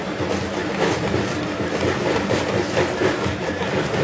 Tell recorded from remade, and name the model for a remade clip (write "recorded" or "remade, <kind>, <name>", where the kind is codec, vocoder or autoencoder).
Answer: recorded